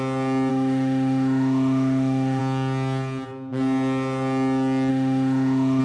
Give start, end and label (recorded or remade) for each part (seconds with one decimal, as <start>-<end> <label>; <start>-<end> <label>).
0.0-0.5 recorded; 0.5-2.4 remade; 2.4-4.9 recorded; 4.9-5.8 remade